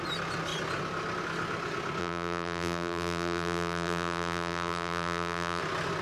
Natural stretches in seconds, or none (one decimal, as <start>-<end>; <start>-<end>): 0.0-2.0; 5.6-6.0